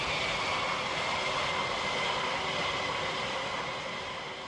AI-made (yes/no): no